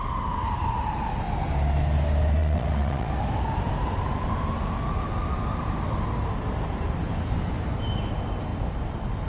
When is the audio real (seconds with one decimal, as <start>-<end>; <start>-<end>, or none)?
0.0-2.4; 3.1-9.3